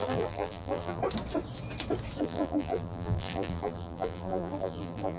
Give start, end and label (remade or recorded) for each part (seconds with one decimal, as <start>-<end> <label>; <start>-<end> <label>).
0.0-1.0 remade; 1.0-2.2 recorded; 2.2-5.2 remade